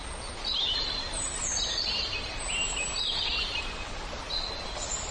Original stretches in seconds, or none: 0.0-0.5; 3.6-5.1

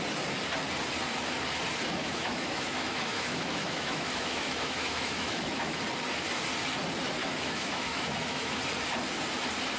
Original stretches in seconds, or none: 0.0-2.0; 5.8-7.2; 8.6-9.8

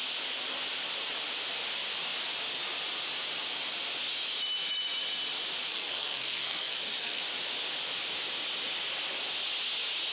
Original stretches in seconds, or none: 0.0-5.7; 7.2-10.1

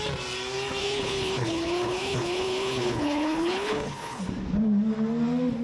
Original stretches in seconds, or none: 0.0-0.8; 4.2-5.6

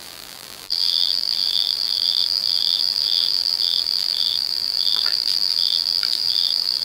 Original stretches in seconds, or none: none

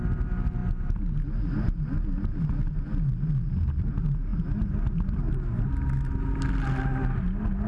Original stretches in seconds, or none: 0.0-7.7

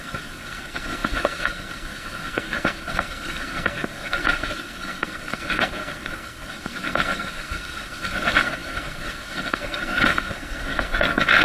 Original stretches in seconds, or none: none